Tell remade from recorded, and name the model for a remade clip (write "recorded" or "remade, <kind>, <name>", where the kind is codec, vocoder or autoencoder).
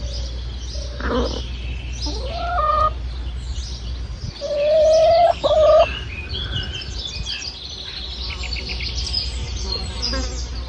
recorded